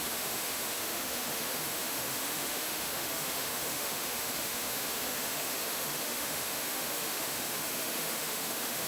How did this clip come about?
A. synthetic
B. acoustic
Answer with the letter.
A